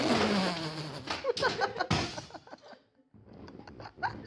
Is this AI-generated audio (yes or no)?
no